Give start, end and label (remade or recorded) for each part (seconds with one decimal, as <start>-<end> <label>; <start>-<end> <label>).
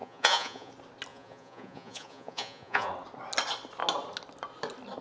0.0-0.7 remade; 0.7-1.1 recorded; 1.1-2.9 remade; 2.9-5.0 recorded